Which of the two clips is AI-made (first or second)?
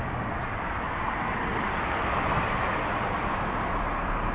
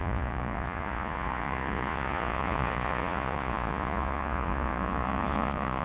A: second